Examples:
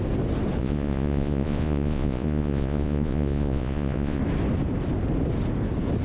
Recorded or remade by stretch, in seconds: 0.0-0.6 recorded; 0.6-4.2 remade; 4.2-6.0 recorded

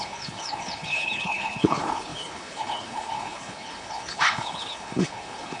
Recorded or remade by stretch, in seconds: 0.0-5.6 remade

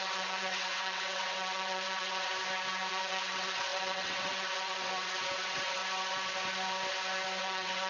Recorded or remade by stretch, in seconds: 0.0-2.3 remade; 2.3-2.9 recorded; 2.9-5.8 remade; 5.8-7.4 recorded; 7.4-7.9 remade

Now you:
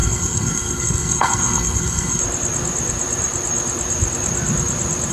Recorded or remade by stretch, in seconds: 0.0-2.2 remade; 2.2-5.1 recorded

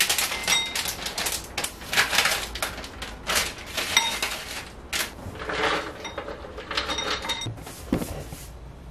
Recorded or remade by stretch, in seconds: 0.0-8.9 recorded